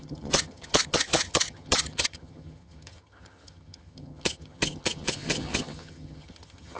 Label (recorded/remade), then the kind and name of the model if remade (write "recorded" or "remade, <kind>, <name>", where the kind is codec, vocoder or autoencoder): remade, vocoder, HiFi-GAN